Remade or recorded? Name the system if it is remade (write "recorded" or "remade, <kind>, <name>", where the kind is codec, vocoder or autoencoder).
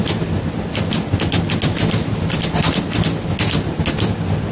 recorded